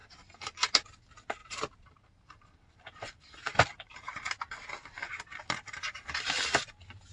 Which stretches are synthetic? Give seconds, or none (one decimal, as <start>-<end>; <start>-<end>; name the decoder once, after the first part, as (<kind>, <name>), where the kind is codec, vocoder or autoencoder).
0.0-0.8 (vocoder, BigVGAN v2); 1.4-4.5; 5.0-6.1